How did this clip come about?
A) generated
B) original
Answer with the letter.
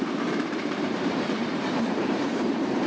A